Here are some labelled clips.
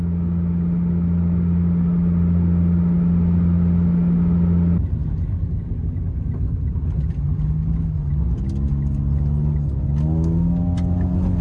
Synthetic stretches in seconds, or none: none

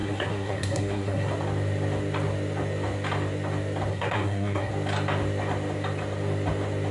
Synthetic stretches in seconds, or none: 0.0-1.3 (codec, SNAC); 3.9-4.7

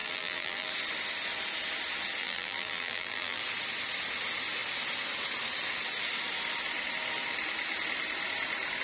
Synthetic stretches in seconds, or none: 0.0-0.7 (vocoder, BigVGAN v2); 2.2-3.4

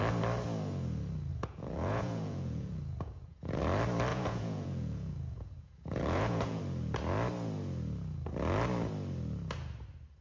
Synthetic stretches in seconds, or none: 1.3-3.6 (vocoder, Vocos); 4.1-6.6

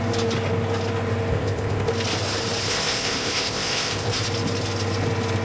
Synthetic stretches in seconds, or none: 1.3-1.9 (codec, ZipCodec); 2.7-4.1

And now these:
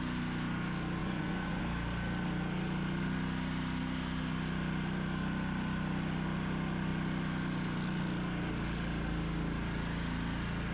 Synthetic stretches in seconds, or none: 1.0-1.6 (vocoder, Vocos)

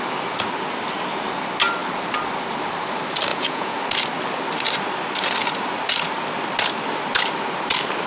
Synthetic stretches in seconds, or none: 3.3-3.8 (vocoder, Vocos)

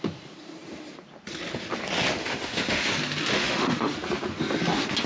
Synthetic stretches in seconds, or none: 2.2-2.9 (autoencoder, DAC-VAE); 3.3-3.9